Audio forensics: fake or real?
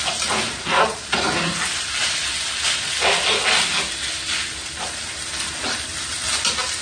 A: real